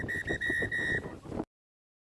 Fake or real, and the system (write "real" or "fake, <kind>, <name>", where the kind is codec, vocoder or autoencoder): real